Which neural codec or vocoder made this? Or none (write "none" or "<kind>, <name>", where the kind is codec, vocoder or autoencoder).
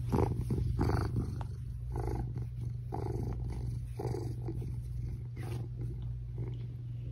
none